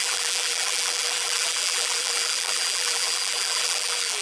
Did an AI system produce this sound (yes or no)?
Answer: yes